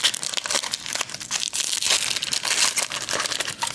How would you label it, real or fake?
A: real